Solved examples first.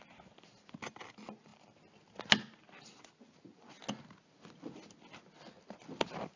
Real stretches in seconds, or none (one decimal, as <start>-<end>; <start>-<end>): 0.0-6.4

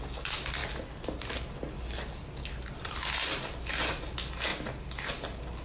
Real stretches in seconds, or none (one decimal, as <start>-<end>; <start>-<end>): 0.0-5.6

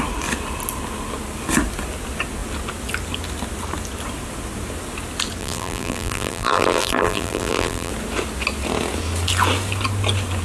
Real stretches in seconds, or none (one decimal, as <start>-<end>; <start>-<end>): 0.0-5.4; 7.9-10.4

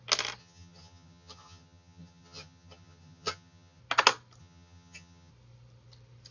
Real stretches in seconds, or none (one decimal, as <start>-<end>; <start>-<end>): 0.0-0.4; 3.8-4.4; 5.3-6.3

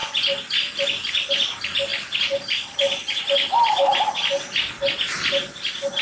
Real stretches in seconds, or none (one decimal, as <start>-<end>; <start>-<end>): 1.3-1.9; 3.6-6.0

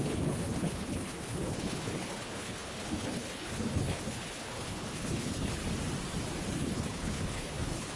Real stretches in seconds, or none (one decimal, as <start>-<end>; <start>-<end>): 5.6-6.5